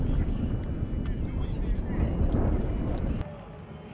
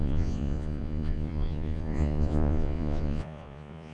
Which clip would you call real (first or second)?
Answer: first